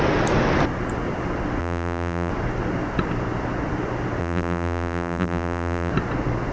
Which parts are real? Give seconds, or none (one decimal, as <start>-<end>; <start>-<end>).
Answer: 0.0-1.6; 2.3-4.2; 5.9-6.5